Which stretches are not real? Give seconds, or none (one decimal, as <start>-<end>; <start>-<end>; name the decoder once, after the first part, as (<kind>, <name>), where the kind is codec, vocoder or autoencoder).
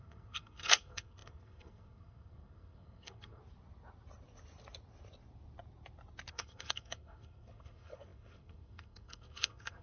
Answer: 0.0-3.4 (codec, SNAC); 6.3-9.8